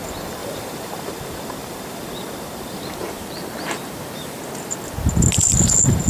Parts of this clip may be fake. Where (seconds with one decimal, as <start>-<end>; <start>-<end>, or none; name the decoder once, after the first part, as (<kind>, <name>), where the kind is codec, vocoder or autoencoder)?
0.4-4.1 (vocoder, BigVGAN v2)